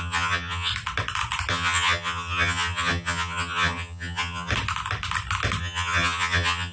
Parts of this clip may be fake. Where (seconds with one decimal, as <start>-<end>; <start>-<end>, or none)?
0.0-0.7; 1.5-4.5; 5.6-6.7